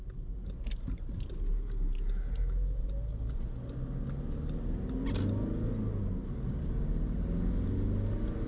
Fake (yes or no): no